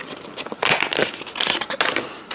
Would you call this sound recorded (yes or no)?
yes